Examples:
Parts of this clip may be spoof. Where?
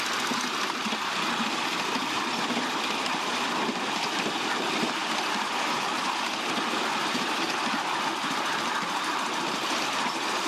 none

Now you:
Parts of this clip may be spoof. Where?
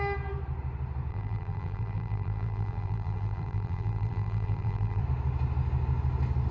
1.1-5.0 (vocoder, BigVGAN v2)